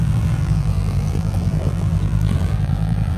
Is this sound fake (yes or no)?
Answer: yes